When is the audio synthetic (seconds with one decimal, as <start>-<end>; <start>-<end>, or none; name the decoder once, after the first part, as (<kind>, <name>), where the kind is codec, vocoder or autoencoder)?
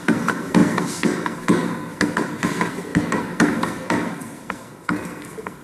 0.0-5.6 (codec, SNAC)